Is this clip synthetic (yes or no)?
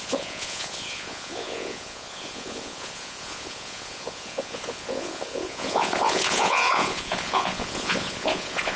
yes